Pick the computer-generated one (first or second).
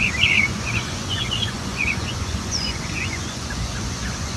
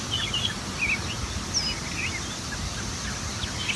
first